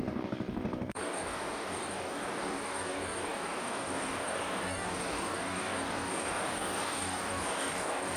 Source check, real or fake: fake